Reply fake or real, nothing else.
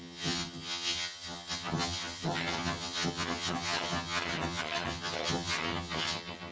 fake